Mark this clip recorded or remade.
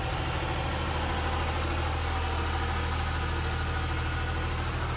recorded